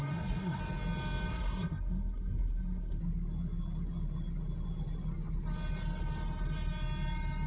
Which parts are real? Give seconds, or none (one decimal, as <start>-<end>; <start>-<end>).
0.6-1.3; 3.0-7.5